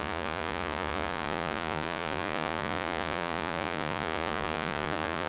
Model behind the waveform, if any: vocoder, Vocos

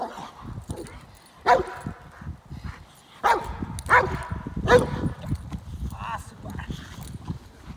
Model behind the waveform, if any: none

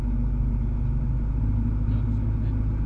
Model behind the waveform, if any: none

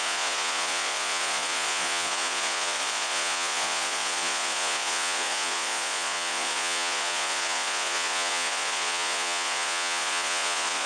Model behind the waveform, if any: vocoder, Vocos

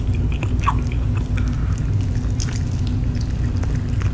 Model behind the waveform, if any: none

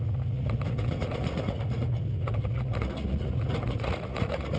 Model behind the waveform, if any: vocoder, Vocos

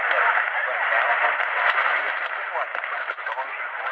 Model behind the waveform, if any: none